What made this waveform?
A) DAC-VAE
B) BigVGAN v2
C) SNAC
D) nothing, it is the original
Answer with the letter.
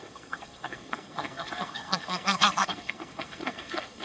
C